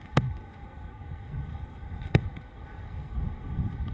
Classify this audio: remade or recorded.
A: remade